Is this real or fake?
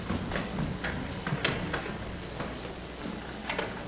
real